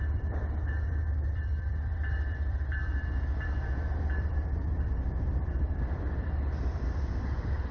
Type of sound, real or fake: fake